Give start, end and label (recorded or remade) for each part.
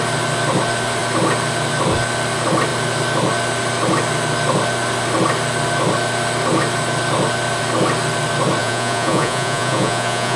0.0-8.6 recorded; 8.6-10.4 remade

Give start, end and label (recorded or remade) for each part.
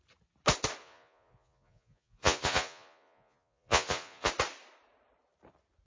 0.0-0.8 recorded; 0.8-4.3 remade; 4.3-5.9 recorded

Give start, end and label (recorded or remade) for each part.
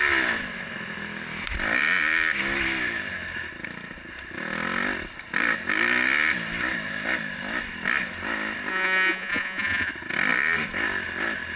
0.0-8.7 recorded; 8.7-9.9 remade; 9.9-11.6 recorded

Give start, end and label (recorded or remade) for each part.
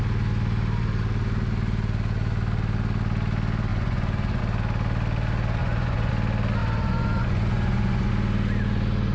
0.0-3.7 recorded; 3.7-4.4 remade; 4.4-5.6 recorded; 5.6-6.1 remade; 6.1-6.6 recorded; 6.6-8.1 remade; 8.1-9.1 recorded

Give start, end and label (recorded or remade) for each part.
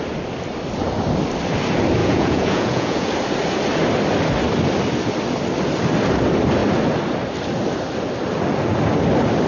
0.0-2.0 recorded; 2.0-3.1 remade; 3.1-9.5 recorded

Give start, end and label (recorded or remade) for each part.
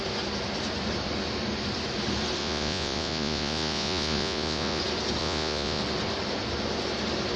0.0-2.4 recorded; 2.4-4.8 remade; 4.8-5.2 recorded; 5.2-5.8 remade; 5.8-7.4 recorded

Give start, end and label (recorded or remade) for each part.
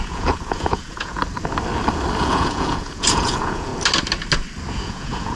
0.0-1.2 remade; 1.2-2.2 recorded; 2.2-3.7 remade; 3.7-4.7 recorded; 4.7-5.4 remade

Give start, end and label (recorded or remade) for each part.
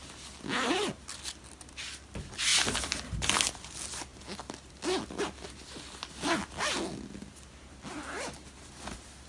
0.0-9.3 recorded